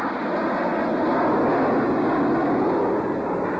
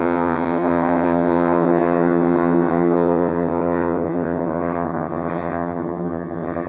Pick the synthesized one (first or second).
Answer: second